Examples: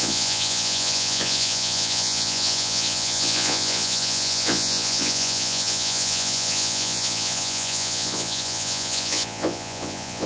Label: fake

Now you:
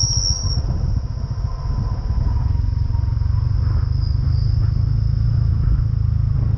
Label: real